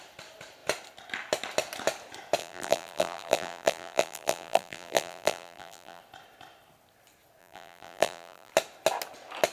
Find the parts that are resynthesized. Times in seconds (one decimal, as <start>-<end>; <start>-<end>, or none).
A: 2.4-6.0; 7.4-8.5